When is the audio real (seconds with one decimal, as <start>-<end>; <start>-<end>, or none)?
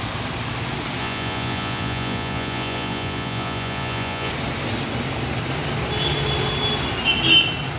0.0-1.0; 4.3-7.8